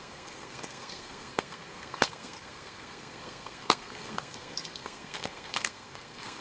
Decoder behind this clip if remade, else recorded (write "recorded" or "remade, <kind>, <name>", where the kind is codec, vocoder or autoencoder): remade, codec, SNAC